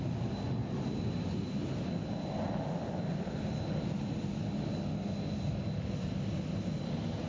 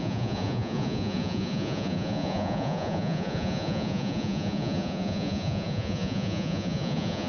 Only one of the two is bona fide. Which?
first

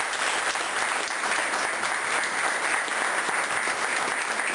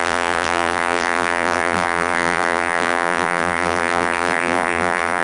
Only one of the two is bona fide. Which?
first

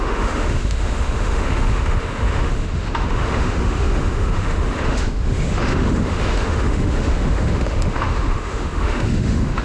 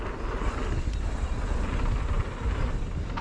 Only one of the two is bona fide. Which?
second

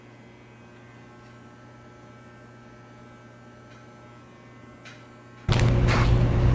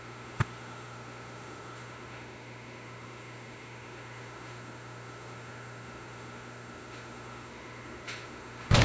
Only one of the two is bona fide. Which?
first